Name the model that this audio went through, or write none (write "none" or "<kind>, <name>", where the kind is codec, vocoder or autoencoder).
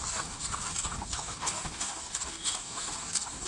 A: codec, DAC